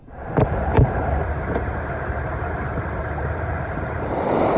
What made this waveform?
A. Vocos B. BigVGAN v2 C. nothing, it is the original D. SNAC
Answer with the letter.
B